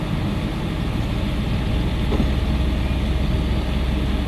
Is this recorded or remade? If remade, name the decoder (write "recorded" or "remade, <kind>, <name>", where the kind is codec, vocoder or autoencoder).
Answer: recorded